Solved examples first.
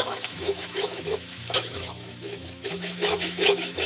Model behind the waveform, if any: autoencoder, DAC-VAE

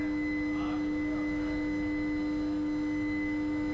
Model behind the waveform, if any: none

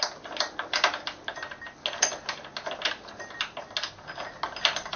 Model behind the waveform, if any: none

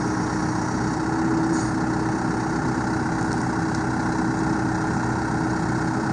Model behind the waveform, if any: none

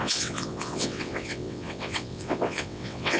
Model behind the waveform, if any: vocoder, WaveNeXt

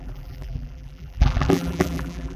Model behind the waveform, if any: vocoder, BigVGAN v2